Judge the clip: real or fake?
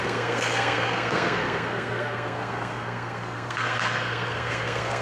fake